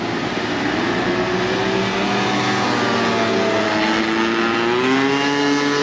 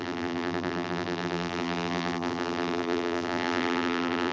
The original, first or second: first